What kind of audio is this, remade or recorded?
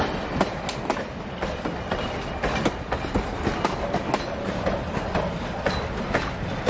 recorded